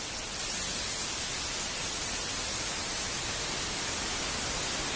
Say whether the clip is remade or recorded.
recorded